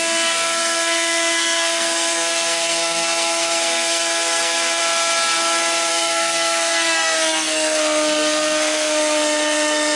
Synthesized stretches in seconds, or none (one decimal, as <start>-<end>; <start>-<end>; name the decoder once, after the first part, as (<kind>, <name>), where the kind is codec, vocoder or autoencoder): 0.0-4.8 (codec, SNAC); 5.9-10.0